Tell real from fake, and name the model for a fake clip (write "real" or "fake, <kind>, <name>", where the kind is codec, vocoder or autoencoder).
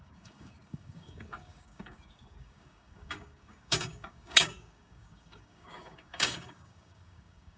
fake, codec, DAC